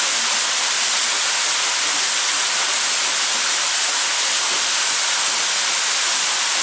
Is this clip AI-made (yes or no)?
no